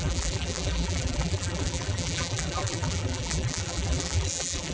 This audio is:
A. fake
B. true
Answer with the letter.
A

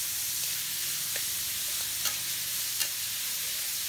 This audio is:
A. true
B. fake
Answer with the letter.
A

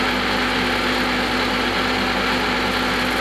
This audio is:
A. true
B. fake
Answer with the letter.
A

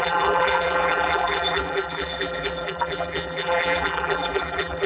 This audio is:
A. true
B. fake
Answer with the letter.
B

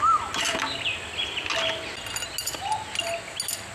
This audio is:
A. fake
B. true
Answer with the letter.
B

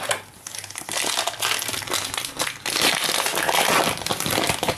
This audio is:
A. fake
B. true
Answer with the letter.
B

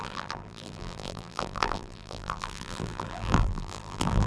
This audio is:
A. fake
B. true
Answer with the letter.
A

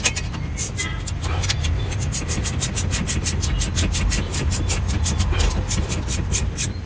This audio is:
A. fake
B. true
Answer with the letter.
B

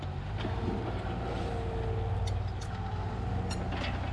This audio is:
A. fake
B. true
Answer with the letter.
B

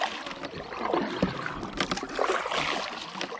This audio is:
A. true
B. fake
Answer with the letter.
A